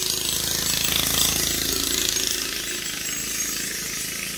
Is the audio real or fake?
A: real